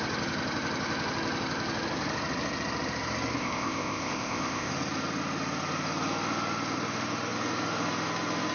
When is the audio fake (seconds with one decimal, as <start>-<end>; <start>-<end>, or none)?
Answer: 3.4-4.7

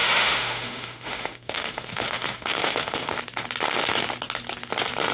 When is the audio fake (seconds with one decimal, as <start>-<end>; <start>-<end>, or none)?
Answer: 0.0-3.1

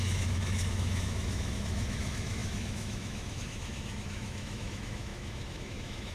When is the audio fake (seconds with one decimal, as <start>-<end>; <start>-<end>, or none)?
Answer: 0.0-6.1

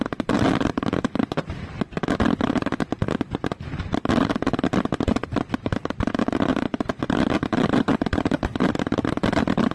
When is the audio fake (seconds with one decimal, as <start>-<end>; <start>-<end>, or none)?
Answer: none